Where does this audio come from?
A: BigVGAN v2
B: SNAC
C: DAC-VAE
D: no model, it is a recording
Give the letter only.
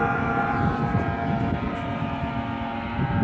A